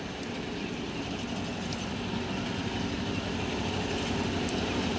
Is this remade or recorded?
recorded